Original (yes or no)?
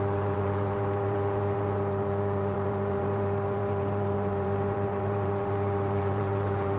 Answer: no